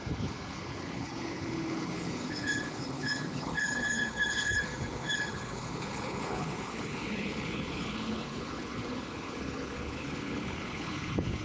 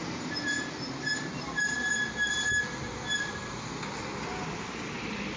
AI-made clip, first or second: first